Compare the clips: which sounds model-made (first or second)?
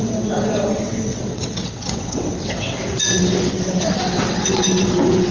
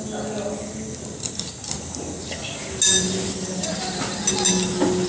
first